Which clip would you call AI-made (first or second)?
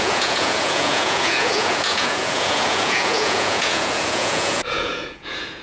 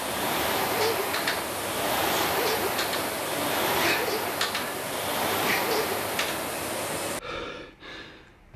first